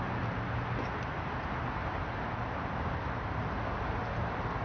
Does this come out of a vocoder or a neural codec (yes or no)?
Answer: no